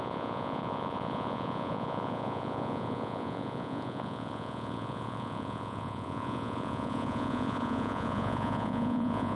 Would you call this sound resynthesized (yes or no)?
yes